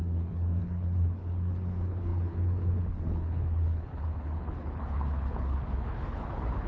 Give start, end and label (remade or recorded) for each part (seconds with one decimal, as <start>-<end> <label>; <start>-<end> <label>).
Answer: 0.0-6.7 remade